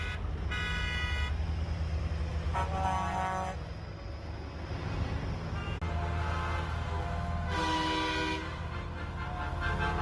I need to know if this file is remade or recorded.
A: recorded